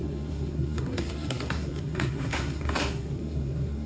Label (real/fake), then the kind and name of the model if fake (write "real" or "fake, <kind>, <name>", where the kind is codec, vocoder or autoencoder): fake, codec, SNAC